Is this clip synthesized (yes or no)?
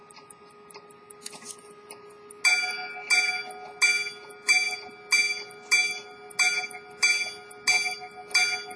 no